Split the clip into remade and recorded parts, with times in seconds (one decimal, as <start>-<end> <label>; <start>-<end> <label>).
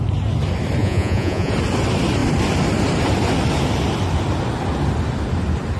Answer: 0.0-0.8 recorded; 0.8-1.5 remade; 1.5-5.8 recorded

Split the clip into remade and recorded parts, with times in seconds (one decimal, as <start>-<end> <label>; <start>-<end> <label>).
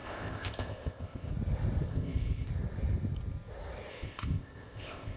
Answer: 0.0-1.3 remade; 1.3-1.9 recorded; 1.9-2.5 remade; 2.5-3.9 recorded; 3.9-5.2 remade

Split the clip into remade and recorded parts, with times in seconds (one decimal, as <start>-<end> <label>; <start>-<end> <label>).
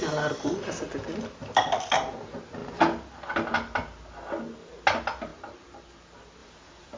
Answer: 0.0-1.4 recorded; 1.4-2.1 remade; 2.1-2.6 recorded; 2.6-3.3 remade; 3.3-5.3 recorded; 5.3-5.9 remade; 5.9-7.0 recorded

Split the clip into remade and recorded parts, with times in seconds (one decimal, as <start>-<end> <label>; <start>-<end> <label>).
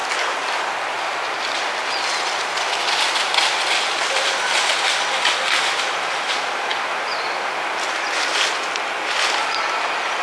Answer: 0.0-10.2 recorded